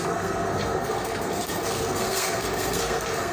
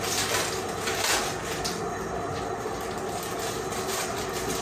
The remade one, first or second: first